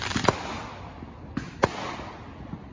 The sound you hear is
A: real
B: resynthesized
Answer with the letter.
A